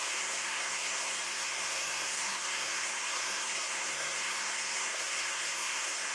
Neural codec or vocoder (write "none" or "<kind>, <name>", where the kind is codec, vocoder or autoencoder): codec, SNAC